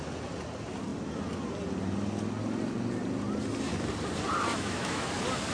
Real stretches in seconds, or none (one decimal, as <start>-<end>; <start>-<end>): 0.0-4.5; 5.1-5.5